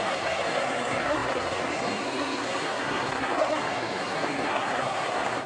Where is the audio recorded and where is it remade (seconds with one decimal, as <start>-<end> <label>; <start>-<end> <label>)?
0.0-5.5 remade